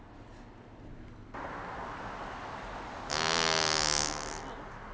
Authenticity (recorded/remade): recorded